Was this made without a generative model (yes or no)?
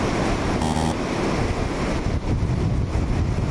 yes